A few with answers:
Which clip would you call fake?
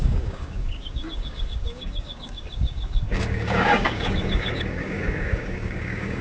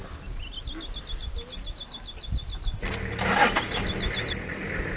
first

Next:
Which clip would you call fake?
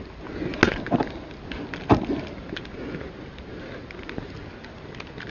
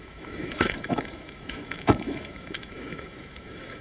second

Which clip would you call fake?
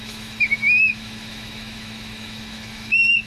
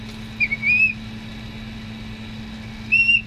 first